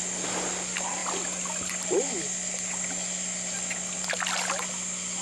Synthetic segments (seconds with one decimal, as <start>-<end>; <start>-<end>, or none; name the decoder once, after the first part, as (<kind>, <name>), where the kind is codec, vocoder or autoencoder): none